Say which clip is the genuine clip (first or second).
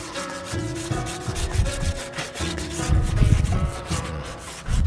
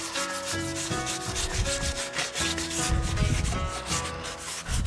second